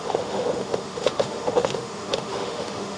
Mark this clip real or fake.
fake